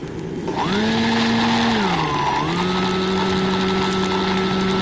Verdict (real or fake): real